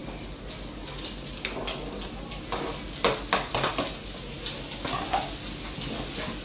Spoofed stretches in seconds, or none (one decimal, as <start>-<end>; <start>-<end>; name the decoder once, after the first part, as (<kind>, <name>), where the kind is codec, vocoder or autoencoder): none